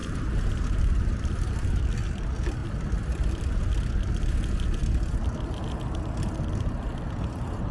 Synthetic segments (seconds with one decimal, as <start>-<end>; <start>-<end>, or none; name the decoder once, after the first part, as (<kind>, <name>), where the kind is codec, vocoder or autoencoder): 0.0-1.8 (vocoder, BigVGAN v2)